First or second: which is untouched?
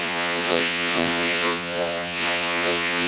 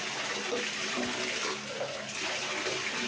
second